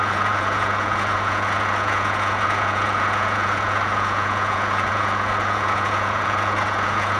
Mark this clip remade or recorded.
remade